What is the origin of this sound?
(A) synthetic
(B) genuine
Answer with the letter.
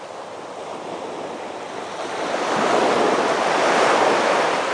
B